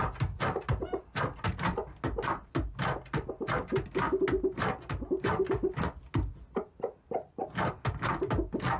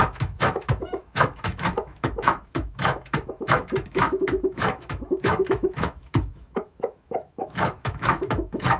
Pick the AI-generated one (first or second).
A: second